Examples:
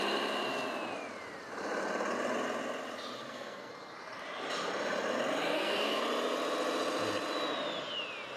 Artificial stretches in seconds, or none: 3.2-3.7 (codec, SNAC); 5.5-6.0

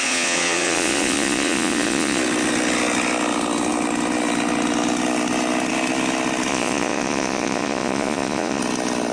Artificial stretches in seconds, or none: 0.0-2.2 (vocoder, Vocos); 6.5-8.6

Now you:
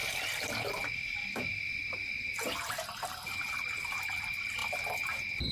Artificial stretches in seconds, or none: 0.0-3.3 (vocoder, BigVGAN v2)

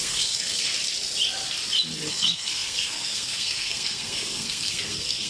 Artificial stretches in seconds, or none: 0.0-0.7 (codec, SNAC); 2.1-5.3

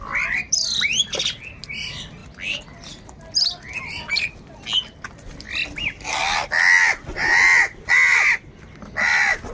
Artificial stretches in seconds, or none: none

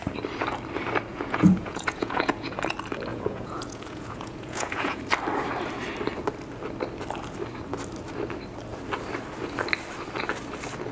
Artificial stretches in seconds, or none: 1.1-2.6 (vocoder, Vocos); 3.1-5.0

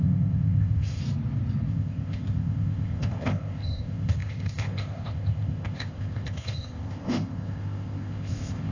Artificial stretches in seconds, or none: 0.0-1.0 (codec, ZipCodec); 1.7-8.7